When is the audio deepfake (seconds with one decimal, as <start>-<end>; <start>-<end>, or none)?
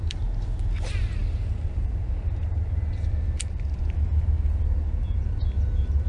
none